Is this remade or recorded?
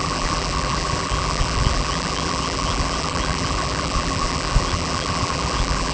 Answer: remade